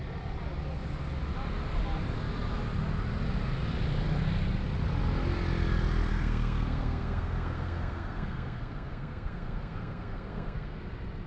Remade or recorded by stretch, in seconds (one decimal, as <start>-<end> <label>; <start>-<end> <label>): 0.0-6.1 recorded; 6.1-10.8 remade; 10.8-11.3 recorded